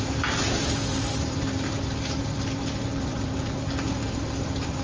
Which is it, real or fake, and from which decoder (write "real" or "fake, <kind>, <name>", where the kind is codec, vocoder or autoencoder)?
fake, vocoder, BigVGAN v2